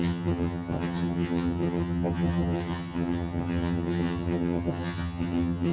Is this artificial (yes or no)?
yes